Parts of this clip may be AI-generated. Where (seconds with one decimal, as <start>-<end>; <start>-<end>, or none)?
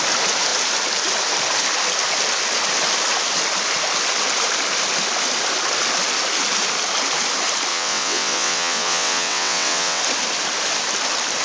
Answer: 7.7-10.0